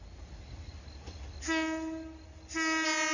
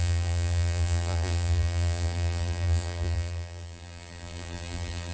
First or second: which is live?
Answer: first